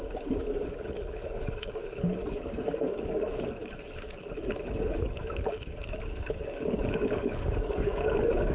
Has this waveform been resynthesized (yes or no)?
yes